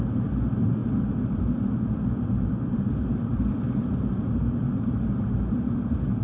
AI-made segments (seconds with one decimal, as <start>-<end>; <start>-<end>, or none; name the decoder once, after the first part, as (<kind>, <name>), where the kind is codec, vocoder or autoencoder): 0.8-4.0 (vocoder, BigVGAN v2)